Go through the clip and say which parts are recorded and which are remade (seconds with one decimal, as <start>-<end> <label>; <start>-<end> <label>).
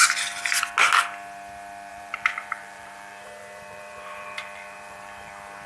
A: 0.0-1.9 recorded; 1.9-5.3 remade; 5.3-5.7 recorded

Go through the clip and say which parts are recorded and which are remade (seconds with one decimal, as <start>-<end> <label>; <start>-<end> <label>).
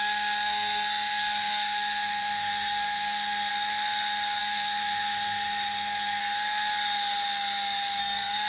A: 0.0-3.5 remade; 3.5-4.4 recorded; 4.4-6.2 remade; 6.2-8.0 recorded; 8.0-8.5 remade